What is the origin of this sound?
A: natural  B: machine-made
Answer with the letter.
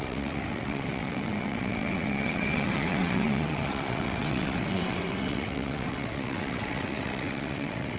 B